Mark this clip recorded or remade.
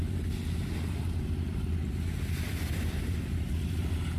recorded